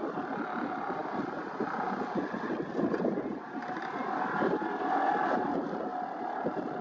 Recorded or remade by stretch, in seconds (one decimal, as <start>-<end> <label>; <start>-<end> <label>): 0.0-6.8 recorded

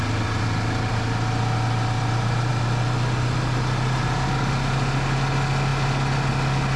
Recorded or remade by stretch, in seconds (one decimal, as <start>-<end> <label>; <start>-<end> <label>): 0.0-6.8 recorded

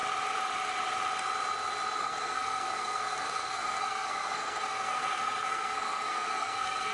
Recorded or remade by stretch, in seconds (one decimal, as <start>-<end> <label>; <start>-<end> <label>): 0.0-2.0 recorded; 2.0-6.9 remade